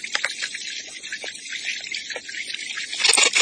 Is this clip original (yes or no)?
yes